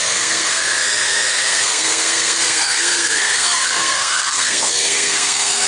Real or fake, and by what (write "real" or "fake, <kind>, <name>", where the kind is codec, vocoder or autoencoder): fake, codec, SNAC